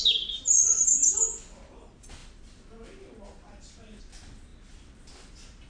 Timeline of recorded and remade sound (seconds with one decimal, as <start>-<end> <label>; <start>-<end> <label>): 0.0-5.7 recorded